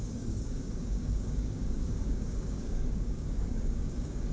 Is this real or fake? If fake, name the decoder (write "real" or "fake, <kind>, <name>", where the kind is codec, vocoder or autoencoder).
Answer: fake, codec, DAC